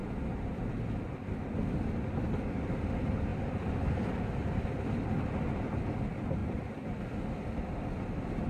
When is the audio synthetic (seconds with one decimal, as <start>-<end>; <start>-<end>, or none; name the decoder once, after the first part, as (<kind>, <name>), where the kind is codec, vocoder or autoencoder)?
0.0-0.7 (vocoder, BigVGAN v2)